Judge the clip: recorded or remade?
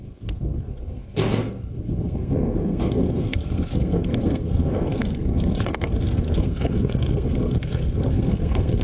remade